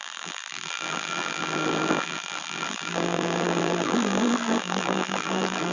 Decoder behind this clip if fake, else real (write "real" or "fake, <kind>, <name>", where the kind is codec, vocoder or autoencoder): fake, vocoder, BigVGAN v2